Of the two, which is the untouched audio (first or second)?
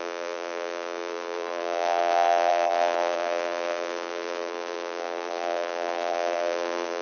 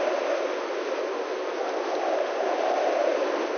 second